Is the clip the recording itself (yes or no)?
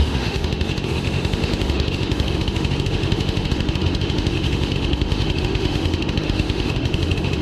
no